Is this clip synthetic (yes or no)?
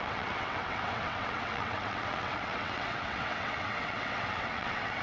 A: yes